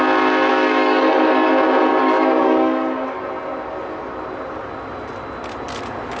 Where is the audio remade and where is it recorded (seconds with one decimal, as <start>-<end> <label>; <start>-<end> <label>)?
0.0-0.5 recorded; 0.5-1.5 remade; 1.5-1.9 recorded; 1.9-3.2 remade; 3.2-6.2 recorded